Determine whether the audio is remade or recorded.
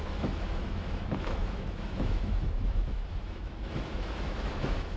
remade